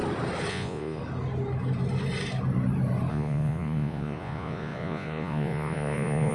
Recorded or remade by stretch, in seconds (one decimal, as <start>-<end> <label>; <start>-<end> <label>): 0.0-0.5 recorded; 0.5-1.0 remade; 1.0-3.1 recorded; 3.1-6.3 remade